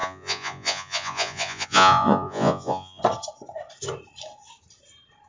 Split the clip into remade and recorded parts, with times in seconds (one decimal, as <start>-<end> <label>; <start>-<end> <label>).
0.0-3.0 remade; 3.0-5.3 recorded